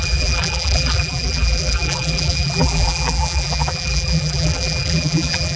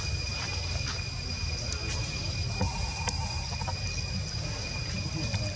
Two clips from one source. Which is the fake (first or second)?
first